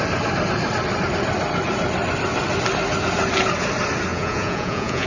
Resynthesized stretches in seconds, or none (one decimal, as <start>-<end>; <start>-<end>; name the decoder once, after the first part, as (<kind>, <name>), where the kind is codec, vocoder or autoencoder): 4.1-5.1 (vocoder, Vocos)